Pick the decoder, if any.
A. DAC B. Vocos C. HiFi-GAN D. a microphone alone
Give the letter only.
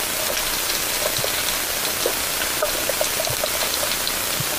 D